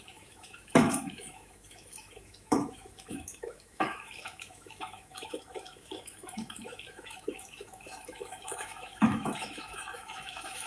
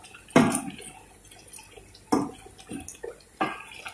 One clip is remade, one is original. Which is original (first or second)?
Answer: second